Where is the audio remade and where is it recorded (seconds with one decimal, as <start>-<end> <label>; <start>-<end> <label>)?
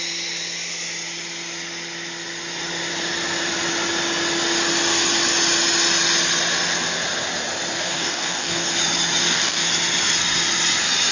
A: 0.0-7.8 recorded; 7.8-8.7 remade; 8.7-9.2 recorded; 9.2-9.7 remade; 9.7-11.1 recorded